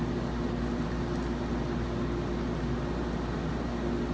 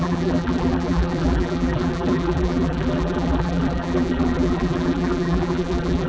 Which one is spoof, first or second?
second